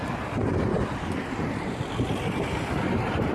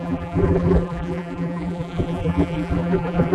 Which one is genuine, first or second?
first